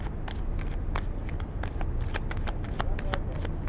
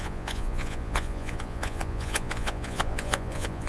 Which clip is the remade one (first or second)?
second